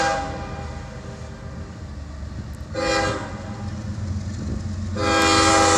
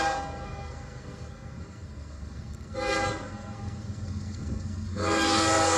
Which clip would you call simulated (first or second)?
second